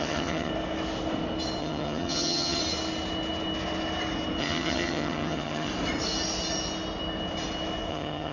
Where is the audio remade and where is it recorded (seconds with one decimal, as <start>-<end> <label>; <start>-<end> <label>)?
0.0-0.5 remade; 0.5-1.6 recorded; 1.6-2.6 remade; 2.6-4.4 recorded; 4.4-5.7 remade; 5.7-7.9 recorded; 7.9-8.3 remade